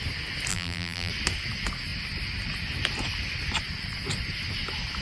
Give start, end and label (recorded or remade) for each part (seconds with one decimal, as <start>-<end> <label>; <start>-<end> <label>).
0.0-0.5 recorded; 0.5-1.1 remade; 1.1-5.0 recorded

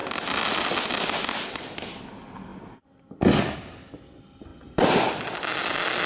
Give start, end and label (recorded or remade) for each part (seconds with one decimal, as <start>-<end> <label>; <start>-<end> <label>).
0.0-6.1 recorded